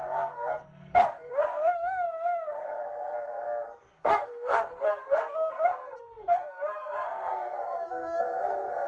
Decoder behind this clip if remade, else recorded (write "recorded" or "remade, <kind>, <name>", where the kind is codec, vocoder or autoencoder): remade, codec, SNAC